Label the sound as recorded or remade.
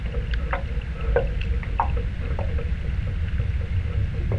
recorded